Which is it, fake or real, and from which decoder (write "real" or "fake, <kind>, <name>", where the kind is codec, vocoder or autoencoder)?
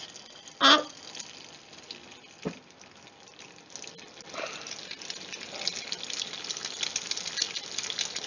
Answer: real